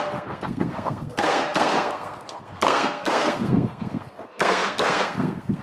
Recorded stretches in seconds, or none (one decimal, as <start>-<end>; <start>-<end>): none

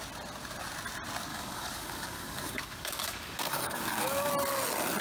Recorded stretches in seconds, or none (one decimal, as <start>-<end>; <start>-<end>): 0.0-1.3; 4.3-5.0

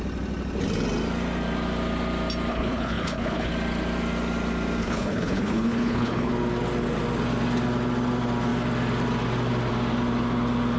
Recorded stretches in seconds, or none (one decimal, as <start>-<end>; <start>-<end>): 0.0-2.5; 3.5-4.8; 6.3-10.8

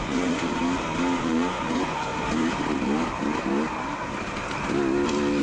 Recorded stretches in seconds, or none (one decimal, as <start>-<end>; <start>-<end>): 0.6-1.2; 2.1-5.4

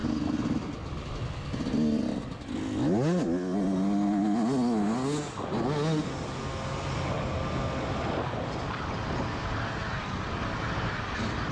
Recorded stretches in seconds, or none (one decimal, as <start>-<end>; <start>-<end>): 0.0-11.5

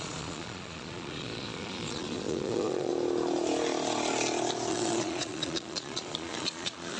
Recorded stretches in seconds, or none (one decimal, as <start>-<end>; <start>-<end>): 2.9-4.7